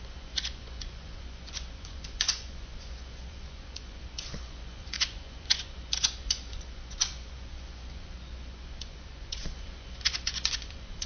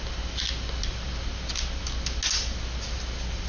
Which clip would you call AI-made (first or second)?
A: first